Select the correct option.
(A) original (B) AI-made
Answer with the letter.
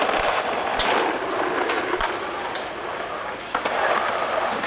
A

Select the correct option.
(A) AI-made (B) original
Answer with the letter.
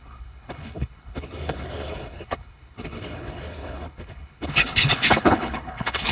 A